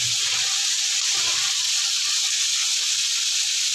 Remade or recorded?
recorded